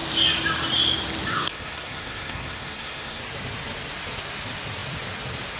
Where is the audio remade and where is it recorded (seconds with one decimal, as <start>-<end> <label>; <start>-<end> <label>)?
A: 0.0-1.3 recorded; 1.3-3.2 remade; 3.2-5.6 recorded